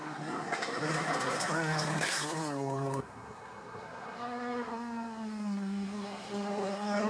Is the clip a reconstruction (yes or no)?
yes